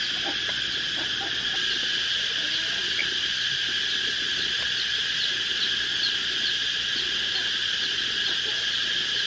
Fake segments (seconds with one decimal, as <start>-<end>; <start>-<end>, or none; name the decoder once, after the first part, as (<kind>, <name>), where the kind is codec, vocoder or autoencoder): none